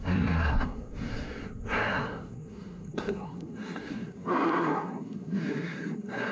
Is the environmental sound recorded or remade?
remade